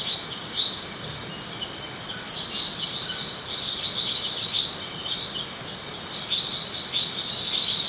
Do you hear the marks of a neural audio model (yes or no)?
no